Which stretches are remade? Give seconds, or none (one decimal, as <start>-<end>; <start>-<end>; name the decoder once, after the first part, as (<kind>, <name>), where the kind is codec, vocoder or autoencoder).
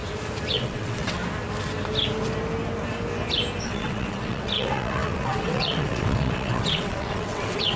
0.5-1.2 (vocoder, WaveNeXt); 3.6-7.8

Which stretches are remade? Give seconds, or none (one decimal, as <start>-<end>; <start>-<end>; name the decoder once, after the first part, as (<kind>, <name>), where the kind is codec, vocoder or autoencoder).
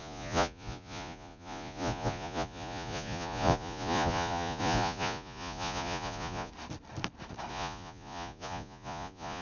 0.0-6.5 (vocoder, Vocos); 7.5-9.4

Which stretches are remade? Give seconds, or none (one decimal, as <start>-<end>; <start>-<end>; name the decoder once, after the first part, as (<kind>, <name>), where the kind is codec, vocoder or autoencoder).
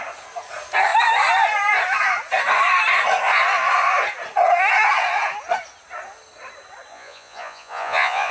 6.9-8.3 (vocoder, Vocos)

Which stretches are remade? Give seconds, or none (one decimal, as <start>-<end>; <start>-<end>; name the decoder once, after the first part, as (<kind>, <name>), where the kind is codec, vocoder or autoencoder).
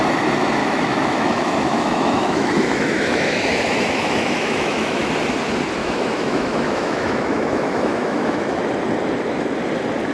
0.6-5.1 (autoencoder, DAC-VAE); 5.8-8.6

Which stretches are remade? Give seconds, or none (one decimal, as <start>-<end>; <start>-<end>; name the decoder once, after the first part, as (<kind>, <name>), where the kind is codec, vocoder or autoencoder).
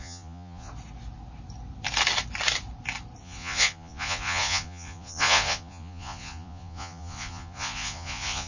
0.0-0.7 (vocoder, Vocos); 3.2-8.5